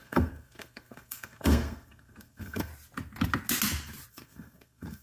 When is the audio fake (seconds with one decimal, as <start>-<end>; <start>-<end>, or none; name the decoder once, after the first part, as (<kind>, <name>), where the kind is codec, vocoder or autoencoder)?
0.0-2.7 (codec, SNAC); 4.1-5.0